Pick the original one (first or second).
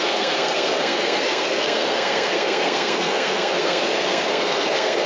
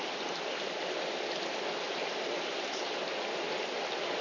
second